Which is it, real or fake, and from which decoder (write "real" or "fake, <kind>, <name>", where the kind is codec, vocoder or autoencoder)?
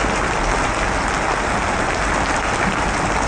real